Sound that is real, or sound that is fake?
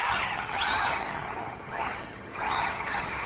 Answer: fake